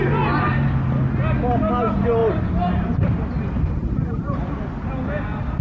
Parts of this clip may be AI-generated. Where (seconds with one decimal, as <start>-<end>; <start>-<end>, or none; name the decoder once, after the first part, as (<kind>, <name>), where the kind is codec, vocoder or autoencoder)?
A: 0.5-1.2 (vocoder, BigVGAN v2); 2.2-4.4